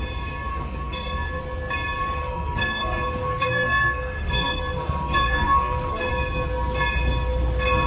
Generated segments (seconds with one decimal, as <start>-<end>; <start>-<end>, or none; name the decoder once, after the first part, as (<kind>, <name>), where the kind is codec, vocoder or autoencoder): 0.5-1.4 (codec, SNAC); 2.2-6.1

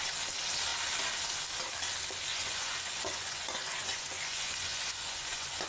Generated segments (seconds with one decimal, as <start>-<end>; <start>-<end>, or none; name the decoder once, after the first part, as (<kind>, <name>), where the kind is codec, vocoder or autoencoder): 2.3-5.7 (vocoder, Vocos)

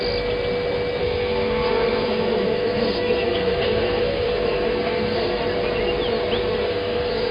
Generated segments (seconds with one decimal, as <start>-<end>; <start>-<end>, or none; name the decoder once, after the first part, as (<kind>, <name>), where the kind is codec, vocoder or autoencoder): 1.0-5.4 (codec, SNAC); 6.6-7.3

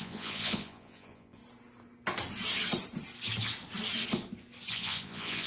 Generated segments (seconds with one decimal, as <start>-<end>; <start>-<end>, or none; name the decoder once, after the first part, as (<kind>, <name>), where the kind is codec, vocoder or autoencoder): 0.0-1.4 (vocoder, Vocos); 4.7-5.5

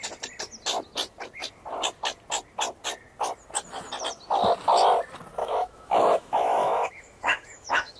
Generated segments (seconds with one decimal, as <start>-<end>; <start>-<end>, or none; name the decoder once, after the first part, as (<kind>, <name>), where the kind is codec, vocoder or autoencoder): 5.4-8.0 (autoencoder, DAC-VAE)

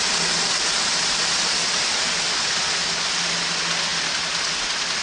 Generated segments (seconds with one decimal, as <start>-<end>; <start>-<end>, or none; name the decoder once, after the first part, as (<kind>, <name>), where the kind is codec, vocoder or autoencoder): none

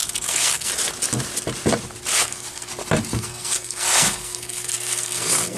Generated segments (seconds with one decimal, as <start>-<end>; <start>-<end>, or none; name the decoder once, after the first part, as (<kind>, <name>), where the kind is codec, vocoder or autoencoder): 0.0-0.7 (codec, SNAC); 2.1-2.7; 3.1-5.6